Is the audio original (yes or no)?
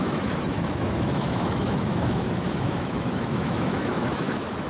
no